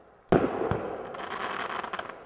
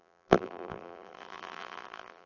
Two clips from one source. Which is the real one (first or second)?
first